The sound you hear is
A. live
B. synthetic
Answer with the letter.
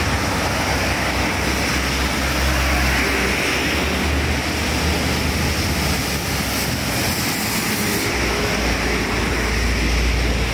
A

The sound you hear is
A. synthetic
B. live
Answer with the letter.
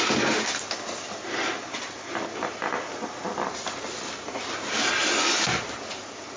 B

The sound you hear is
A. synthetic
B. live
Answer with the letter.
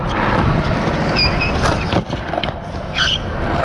B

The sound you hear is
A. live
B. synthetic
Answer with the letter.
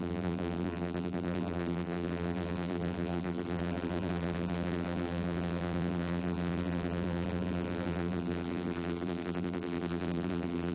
B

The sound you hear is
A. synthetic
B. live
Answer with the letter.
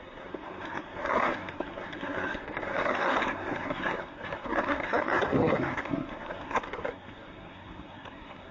A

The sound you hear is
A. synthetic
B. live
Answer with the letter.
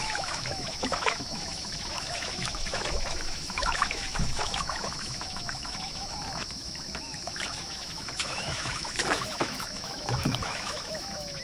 A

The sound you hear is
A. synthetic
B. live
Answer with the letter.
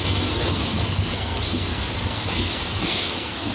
A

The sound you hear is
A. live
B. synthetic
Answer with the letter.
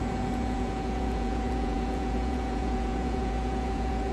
B